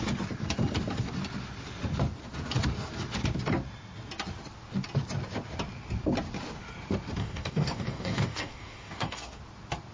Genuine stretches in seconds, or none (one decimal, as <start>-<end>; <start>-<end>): 0.0-7.2; 9.4-9.9